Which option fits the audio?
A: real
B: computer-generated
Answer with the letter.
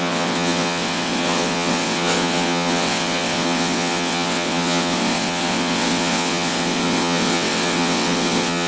B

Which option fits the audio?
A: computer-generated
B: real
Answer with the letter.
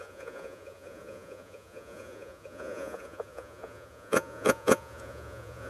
A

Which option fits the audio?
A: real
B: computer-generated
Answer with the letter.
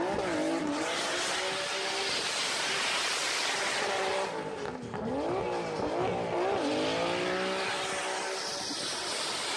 A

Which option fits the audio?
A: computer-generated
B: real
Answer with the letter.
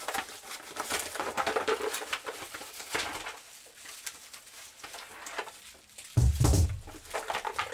B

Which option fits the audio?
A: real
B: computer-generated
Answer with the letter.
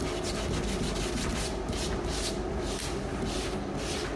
A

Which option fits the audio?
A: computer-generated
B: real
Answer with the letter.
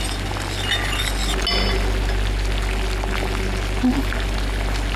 B